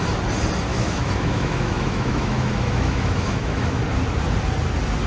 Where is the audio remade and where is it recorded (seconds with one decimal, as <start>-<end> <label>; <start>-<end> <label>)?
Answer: 0.0-0.7 recorded; 0.7-3.8 remade; 3.8-5.1 recorded